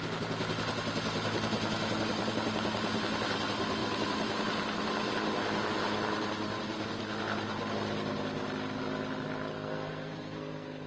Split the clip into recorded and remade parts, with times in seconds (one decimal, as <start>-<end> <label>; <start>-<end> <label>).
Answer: 0.0-9.5 recorded; 9.5-10.9 remade